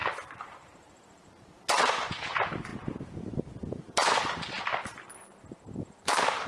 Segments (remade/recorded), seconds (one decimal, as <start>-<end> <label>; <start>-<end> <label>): 0.0-2.7 remade; 2.7-3.7 recorded; 3.7-4.7 remade; 4.7-5.8 recorded; 5.8-6.5 remade